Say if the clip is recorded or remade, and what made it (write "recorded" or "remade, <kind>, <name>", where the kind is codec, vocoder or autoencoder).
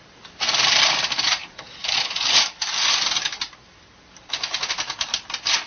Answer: recorded